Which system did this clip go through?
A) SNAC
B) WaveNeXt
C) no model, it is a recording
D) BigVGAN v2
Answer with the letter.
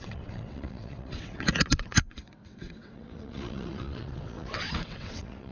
B